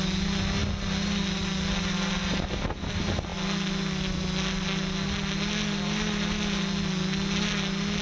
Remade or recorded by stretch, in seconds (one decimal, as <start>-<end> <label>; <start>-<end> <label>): 0.0-8.0 recorded